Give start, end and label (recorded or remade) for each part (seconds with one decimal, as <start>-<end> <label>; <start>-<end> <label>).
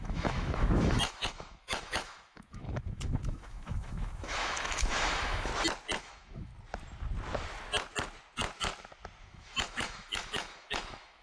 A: 0.0-5.5 remade; 5.5-6.0 recorded; 6.0-6.5 remade; 6.5-9.2 recorded; 9.2-11.2 remade